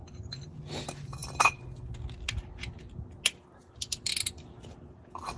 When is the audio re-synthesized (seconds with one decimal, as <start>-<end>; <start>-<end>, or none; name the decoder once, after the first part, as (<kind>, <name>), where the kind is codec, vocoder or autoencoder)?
0.0-0.5 (vocoder, BigVGAN v2)